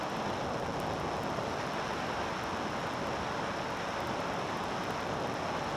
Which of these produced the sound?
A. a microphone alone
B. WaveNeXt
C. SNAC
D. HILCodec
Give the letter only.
A